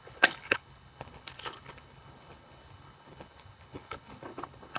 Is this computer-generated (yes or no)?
yes